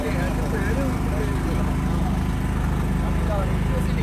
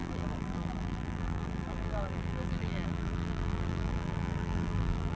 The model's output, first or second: second